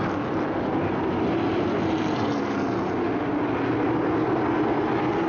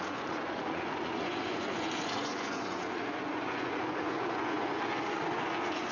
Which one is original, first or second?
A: first